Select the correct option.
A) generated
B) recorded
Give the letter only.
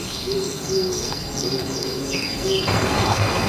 A